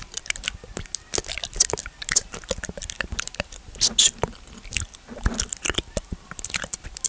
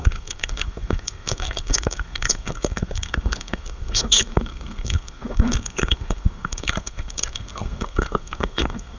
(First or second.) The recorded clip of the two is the first